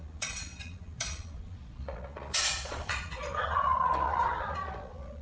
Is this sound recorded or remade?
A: remade